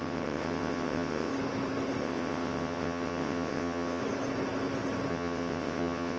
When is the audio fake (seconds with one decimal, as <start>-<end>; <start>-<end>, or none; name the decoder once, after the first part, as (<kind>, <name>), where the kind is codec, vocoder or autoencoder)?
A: 0.0-1.3 (vocoder, WaveNeXt); 2.0-4.0; 5.1-6.2